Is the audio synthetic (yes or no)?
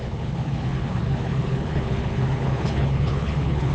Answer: yes